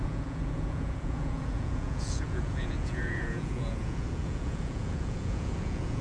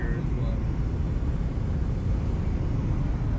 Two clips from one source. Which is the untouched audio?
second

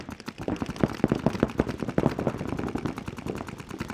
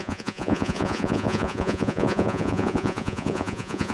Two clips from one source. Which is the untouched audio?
first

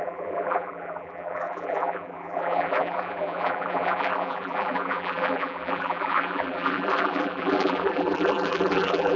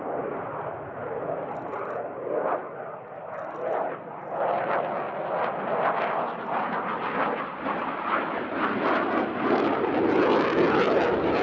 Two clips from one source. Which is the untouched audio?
second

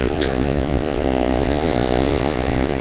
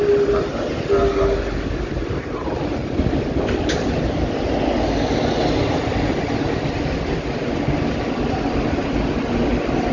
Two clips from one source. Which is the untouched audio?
second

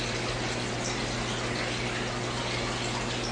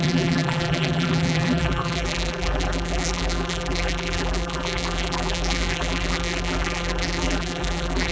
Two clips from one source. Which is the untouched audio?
first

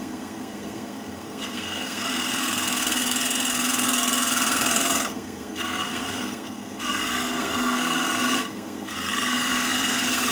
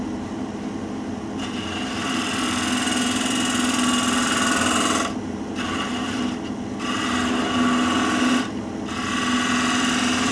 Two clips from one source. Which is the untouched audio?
second